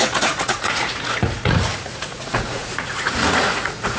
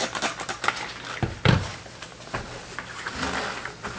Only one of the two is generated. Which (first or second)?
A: first